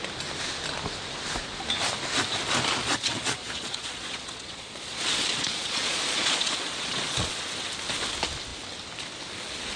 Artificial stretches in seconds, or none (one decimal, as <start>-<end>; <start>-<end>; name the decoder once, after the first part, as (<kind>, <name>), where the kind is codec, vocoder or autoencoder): 2.8-7.4 (vocoder, Vocos)